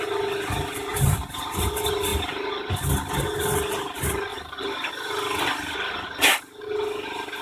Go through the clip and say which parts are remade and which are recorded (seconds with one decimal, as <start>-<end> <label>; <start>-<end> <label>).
0.0-0.9 recorded; 0.9-1.7 remade; 1.7-4.3 recorded; 4.3-4.9 remade; 4.9-7.4 recorded